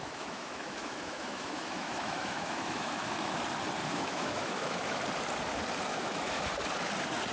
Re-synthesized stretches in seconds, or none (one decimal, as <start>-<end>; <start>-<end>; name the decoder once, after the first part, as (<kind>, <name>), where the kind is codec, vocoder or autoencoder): 0.0-3.4 (autoencoder, DAC-VAE); 3.8-5.0; 5.9-6.5